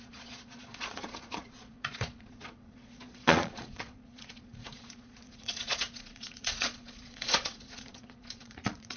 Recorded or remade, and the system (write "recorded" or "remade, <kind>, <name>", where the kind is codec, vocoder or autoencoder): remade, vocoder, Vocos